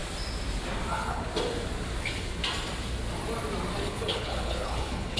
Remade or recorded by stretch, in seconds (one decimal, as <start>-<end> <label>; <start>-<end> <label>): 0.0-0.9 recorded; 0.9-1.3 remade; 1.3-2.0 recorded; 2.0-2.4 remade; 2.4-3.8 recorded; 3.8-5.2 remade